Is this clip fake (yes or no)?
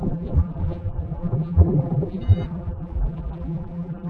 yes